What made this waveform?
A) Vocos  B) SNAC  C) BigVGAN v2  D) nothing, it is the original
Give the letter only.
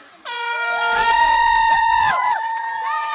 A